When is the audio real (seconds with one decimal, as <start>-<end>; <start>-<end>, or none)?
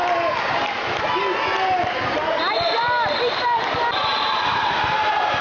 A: 0.0-4.1; 4.8-5.4